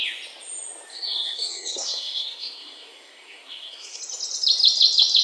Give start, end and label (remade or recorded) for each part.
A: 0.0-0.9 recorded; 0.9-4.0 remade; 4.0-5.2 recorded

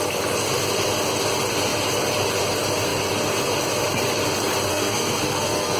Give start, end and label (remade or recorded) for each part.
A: 0.0-4.7 recorded; 4.7-5.8 remade

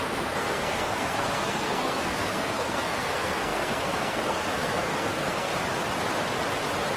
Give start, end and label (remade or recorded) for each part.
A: 0.0-5.5 remade; 5.5-7.0 recorded

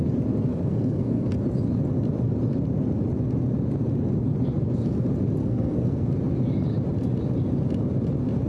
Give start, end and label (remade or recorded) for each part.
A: 0.0-0.5 recorded; 0.5-1.3 remade; 1.3-5.4 recorded; 5.4-6.1 remade; 6.1-8.5 recorded

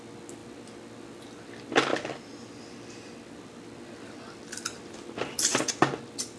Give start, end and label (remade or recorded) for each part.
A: 0.0-6.4 recorded

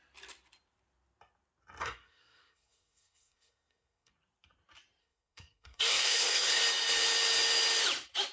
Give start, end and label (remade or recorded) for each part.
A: 0.0-1.8 recorded; 1.8-4.1 remade; 4.1-5.0 recorded; 5.0-6.6 remade; 6.6-8.3 recorded

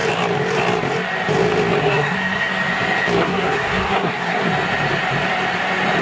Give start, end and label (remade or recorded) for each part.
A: 0.0-1.8 recorded; 1.8-2.5 remade; 2.5-3.2 recorded; 3.2-4.5 remade; 4.5-6.0 recorded